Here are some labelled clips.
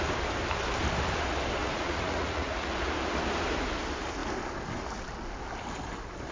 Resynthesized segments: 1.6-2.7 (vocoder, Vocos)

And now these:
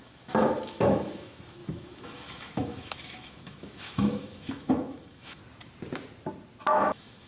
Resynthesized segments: 0.0-5.4 (autoencoder, DAC-VAE); 6.6-7.3

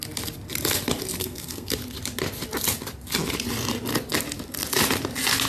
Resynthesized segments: 1.2-1.7 (codec, SNAC)

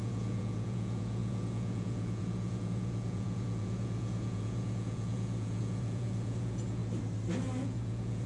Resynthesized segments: 0.0-6.8 (vocoder, Vocos); 7.6-8.3

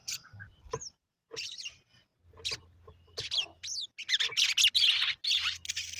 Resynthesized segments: 0.0-2.1 (vocoder, BigVGAN v2); 4.7-6.0

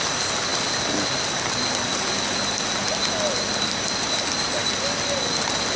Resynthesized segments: none